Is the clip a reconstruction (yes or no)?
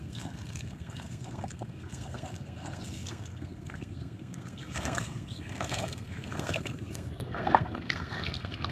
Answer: yes